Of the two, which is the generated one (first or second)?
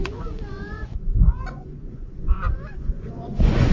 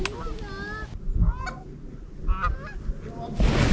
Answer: first